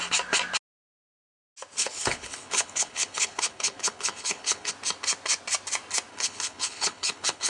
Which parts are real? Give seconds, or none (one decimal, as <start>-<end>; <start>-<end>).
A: 0.0-1.8; 4.7-6.1